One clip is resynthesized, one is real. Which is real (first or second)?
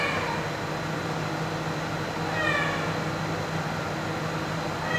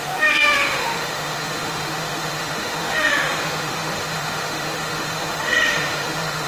first